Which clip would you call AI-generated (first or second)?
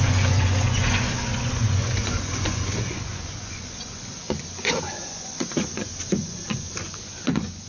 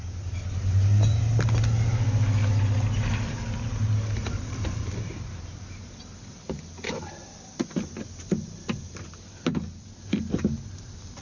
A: first